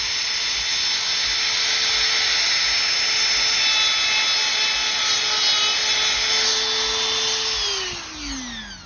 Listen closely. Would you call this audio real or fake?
real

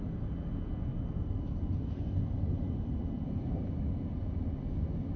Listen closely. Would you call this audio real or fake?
real